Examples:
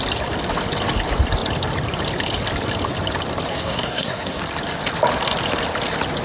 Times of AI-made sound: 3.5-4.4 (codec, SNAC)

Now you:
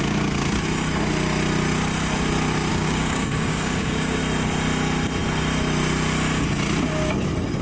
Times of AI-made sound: 2.7-4.2 (codec, DAC)